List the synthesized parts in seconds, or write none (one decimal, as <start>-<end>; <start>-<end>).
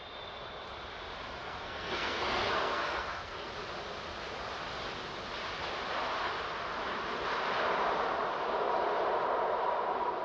1.4-3.5